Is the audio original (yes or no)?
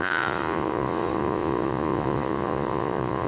no